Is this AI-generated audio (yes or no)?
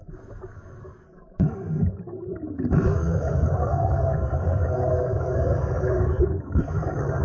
yes